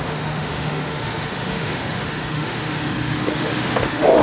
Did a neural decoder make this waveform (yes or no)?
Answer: yes